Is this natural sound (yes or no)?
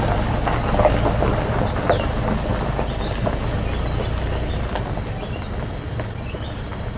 yes